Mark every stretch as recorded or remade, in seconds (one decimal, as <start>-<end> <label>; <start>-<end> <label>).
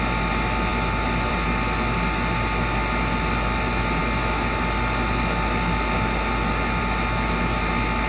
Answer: 0.0-8.1 recorded